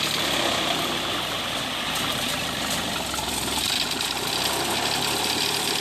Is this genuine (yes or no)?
yes